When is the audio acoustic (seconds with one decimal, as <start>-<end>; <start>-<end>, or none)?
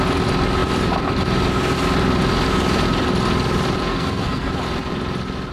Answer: 0.0-3.9; 4.5-5.5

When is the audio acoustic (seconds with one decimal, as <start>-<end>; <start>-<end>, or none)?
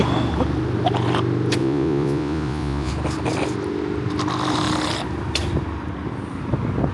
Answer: 0.0-1.6; 2.9-6.9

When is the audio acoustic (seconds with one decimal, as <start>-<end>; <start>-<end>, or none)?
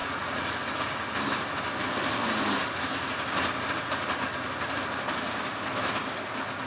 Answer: 0.6-6.7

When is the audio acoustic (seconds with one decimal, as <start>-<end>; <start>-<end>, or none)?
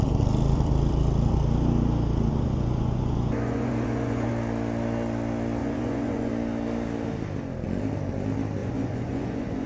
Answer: 0.0-2.3; 4.3-5.6; 6.3-8.6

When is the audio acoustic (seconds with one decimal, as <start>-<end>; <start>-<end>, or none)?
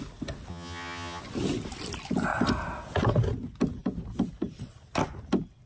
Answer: 0.0-0.5; 1.2-5.7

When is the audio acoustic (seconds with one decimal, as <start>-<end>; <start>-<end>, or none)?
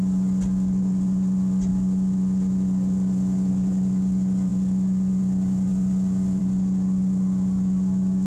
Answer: 0.0-8.3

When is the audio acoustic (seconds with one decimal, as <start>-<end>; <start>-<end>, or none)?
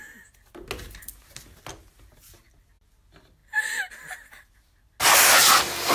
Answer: 0.0-5.9